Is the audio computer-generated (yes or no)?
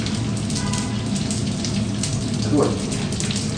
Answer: no